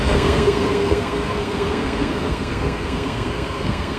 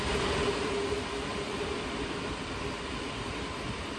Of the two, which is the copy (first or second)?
first